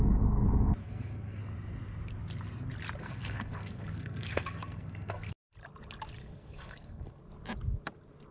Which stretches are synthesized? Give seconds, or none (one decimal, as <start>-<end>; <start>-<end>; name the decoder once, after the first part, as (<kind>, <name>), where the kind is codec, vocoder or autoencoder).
0.8-1.4 (codec, SNAC); 3.0-5.3; 6.2-7.2